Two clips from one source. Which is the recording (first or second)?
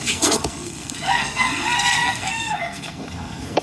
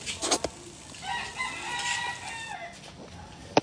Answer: second